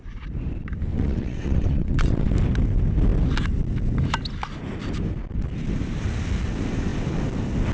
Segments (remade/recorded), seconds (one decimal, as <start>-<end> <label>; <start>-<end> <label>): 0.0-0.9 recorded; 0.9-2.3 remade; 2.3-7.7 recorded